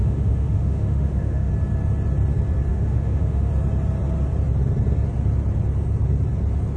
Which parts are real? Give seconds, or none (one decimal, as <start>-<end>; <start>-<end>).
1.5-2.7; 3.5-6.8